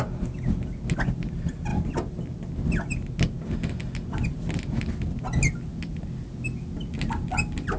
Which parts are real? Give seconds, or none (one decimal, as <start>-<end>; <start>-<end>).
0.0-7.8

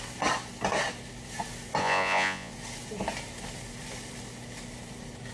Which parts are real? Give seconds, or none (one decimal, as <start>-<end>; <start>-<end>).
0.0-1.8; 2.5-5.3